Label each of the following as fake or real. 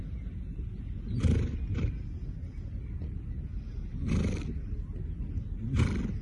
real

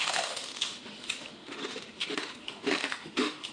fake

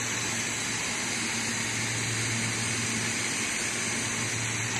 real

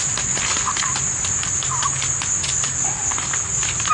real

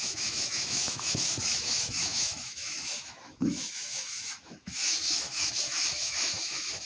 fake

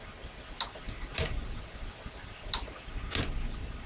real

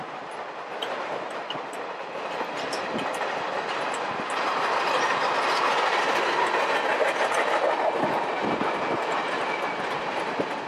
real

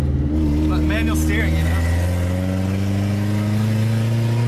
real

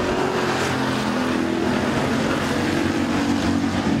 real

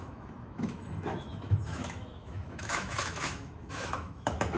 fake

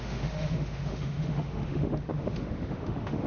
fake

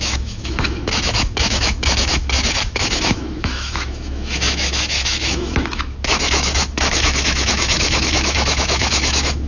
fake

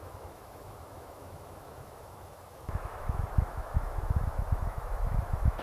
fake